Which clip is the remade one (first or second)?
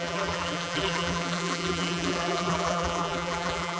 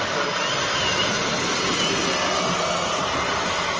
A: first